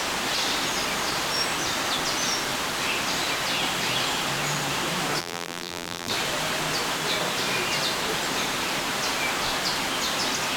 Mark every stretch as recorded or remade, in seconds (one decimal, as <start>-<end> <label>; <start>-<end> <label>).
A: 0.0-5.2 recorded; 5.2-6.1 remade; 6.1-10.6 recorded